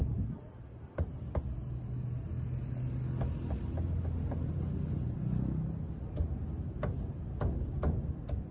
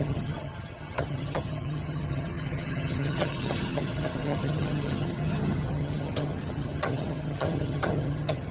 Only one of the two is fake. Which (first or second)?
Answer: second